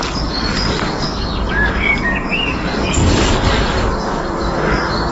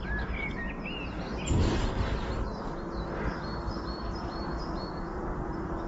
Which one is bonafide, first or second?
second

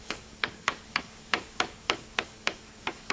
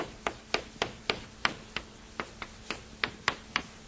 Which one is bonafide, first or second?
second